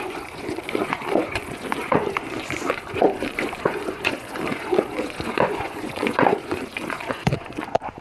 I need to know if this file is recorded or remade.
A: remade